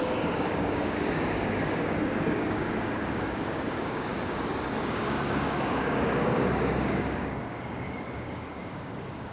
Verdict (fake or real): fake